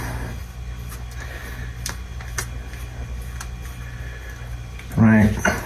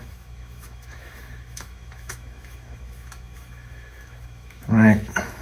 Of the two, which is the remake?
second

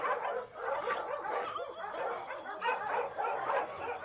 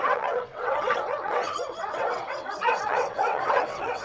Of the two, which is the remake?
second